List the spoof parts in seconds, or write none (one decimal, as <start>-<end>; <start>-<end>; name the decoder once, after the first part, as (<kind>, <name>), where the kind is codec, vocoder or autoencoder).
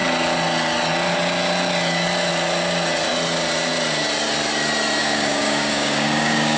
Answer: 5.0-6.6 (codec, DAC)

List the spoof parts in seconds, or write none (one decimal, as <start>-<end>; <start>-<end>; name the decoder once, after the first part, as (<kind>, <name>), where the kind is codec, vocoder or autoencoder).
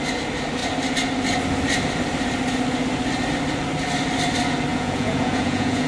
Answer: 4.7-5.9 (vocoder, Vocos)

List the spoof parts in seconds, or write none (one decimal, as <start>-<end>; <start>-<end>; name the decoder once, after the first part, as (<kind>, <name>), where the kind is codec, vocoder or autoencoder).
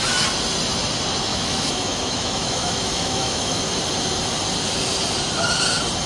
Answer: 1.3-3.6 (autoencoder, DAC-VAE)